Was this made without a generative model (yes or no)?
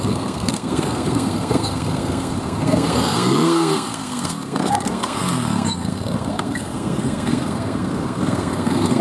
no